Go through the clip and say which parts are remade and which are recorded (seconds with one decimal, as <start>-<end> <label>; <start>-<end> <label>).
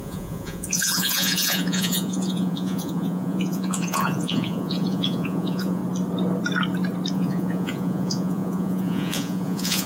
0.0-5.8 remade; 5.8-7.1 recorded; 7.1-9.9 remade